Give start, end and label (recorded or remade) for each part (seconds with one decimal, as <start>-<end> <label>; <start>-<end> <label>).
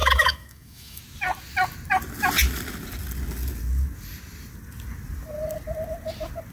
0.0-1.0 remade; 1.0-6.5 recorded